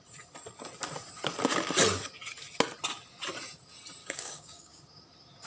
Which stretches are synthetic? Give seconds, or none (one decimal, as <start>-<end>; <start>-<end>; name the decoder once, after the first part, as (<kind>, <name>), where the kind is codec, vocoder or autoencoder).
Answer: 4.0-4.8 (codec, DAC)